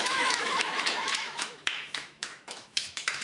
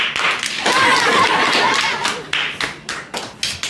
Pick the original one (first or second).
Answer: second